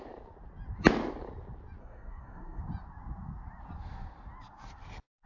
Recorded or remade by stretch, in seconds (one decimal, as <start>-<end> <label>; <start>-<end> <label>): 0.0-1.8 recorded; 1.8-2.6 remade; 2.6-5.3 recorded